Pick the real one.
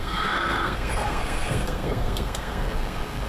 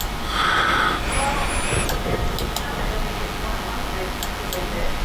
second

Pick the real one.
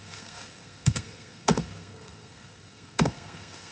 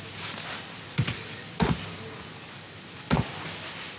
second